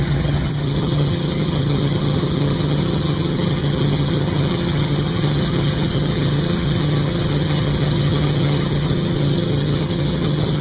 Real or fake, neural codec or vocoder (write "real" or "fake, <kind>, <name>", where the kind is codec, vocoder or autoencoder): fake, vocoder, HiFi-GAN